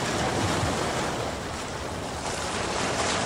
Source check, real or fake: real